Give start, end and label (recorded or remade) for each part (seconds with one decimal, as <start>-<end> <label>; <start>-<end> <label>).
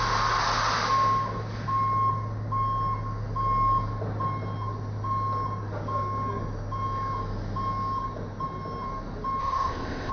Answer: 0.0-9.4 recorded; 9.4-10.1 remade